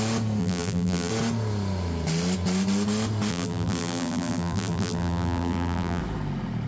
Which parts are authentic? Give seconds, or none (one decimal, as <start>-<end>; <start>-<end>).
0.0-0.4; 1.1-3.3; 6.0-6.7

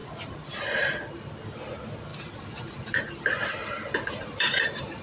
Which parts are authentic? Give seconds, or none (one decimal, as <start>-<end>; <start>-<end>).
0.9-2.1

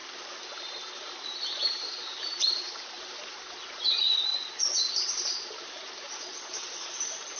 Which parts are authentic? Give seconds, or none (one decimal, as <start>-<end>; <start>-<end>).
0.0-0.5; 4.3-4.9

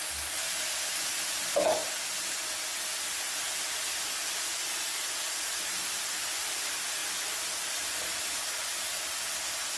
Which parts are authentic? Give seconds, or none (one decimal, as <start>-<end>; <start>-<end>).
0.0-7.0; 9.1-9.8

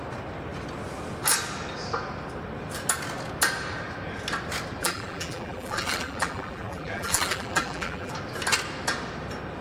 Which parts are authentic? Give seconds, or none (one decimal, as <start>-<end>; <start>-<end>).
0.0-4.8; 8.1-9.6

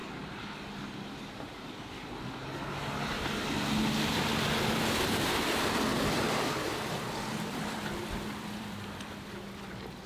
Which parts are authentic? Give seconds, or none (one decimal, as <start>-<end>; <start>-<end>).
0.0-5.9; 9.6-10.1